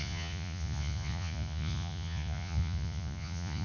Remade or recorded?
remade